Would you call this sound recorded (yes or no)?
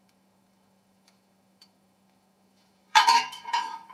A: no